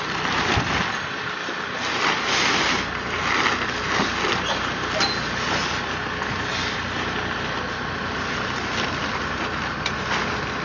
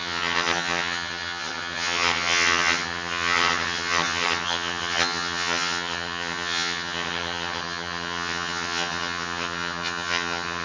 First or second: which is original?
first